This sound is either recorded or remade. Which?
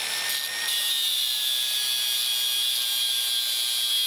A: recorded